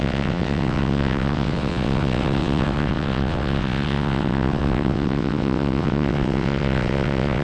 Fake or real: fake